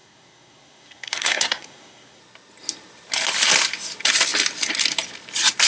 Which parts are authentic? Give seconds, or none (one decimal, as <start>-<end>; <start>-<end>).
2.2-5.7